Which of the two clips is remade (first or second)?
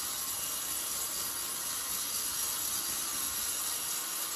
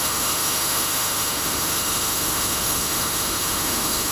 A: second